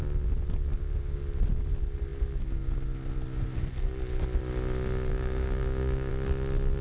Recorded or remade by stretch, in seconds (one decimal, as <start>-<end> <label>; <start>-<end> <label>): 0.0-0.7 recorded; 0.7-1.2 remade; 1.2-5.1 recorded; 5.1-6.1 remade; 6.1-6.8 recorded